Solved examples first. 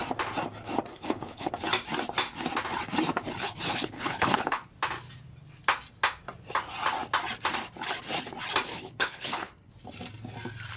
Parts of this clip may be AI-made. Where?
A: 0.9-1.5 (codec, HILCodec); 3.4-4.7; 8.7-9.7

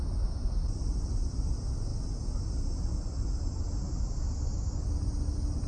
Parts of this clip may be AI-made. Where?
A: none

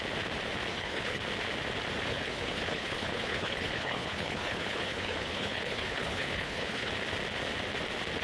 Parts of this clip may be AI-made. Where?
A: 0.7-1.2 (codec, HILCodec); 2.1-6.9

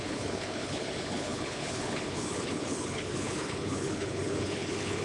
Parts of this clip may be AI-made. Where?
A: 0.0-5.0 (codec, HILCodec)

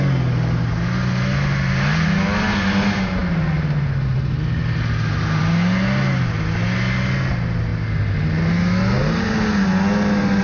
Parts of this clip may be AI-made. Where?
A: none

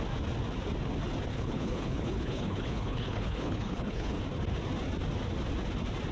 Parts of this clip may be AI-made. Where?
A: 1.3-4.2 (codec, HILCodec)

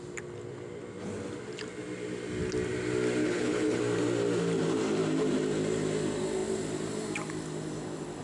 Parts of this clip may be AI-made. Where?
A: 3.2-3.8 (codec, HILCodec)

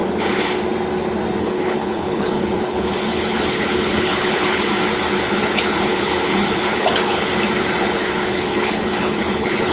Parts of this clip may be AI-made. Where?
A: 1.4-4.7 (codec, HILCodec); 5.3-7.3; 7.8-9.7